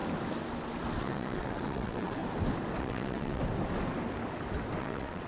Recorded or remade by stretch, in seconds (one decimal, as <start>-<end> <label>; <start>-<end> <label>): 0.0-1.0 recorded; 1.0-2.2 remade; 2.2-2.8 recorded; 2.8-3.4 remade; 3.4-4.8 recorded; 4.8-5.3 remade